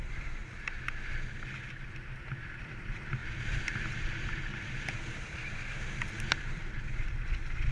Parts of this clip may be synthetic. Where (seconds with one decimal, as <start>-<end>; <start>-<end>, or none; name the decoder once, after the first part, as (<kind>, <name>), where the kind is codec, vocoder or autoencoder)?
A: 0.0-0.4 (vocoder, BigVGAN v2); 2.2-3.2; 3.9-4.4; 6.4-7.7